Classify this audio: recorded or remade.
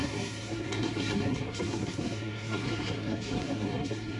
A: remade